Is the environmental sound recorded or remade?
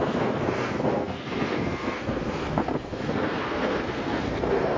remade